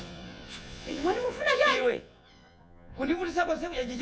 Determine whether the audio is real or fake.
fake